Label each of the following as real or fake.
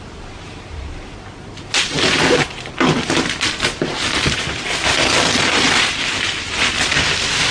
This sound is fake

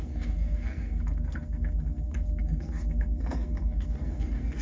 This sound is fake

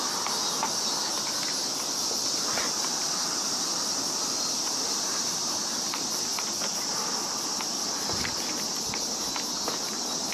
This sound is real